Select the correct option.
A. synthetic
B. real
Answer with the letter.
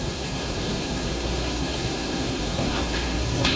A